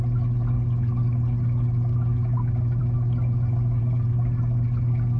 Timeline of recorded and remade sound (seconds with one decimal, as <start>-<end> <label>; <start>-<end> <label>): 0.0-5.2 recorded